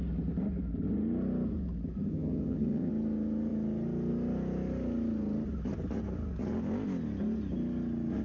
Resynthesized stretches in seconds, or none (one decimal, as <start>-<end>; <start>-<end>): 2.1-2.9